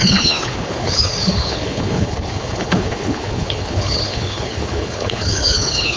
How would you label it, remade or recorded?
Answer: remade